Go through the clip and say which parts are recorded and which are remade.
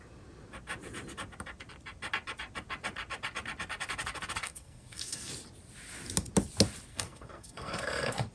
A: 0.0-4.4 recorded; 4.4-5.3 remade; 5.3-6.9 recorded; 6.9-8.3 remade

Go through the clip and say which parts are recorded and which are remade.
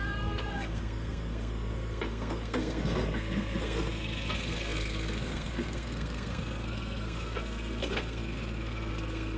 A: 0.0-9.4 remade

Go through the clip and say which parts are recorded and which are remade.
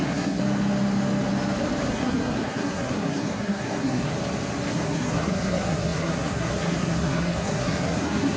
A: 0.0-0.4 remade; 0.4-1.9 recorded; 1.9-4.1 remade; 4.1-4.7 recorded; 4.7-8.4 remade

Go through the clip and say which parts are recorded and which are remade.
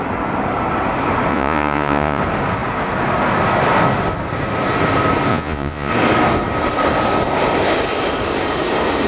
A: 0.0-1.3 recorded; 1.3-2.2 remade; 2.2-5.3 recorded; 5.3-5.9 remade; 5.9-9.1 recorded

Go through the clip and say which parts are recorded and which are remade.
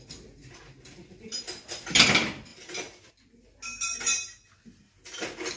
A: 0.0-2.5 recorded; 2.5-3.1 remade; 3.1-5.6 recorded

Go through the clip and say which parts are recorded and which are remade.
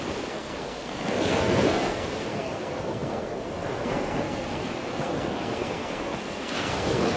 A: 0.0-7.2 remade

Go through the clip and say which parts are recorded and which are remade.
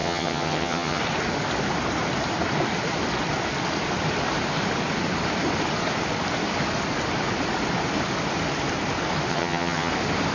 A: 0.0-1.0 remade; 1.0-9.3 recorded; 9.3-9.9 remade; 9.9-10.3 recorded